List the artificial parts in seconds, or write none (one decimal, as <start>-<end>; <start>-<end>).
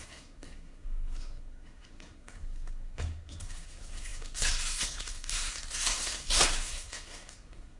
0.0-7.8